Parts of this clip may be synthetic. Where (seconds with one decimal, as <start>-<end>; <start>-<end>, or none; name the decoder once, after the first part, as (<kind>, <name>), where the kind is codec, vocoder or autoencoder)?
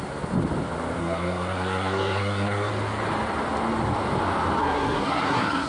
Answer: 1.0-2.7 (codec, SNAC); 4.6-5.7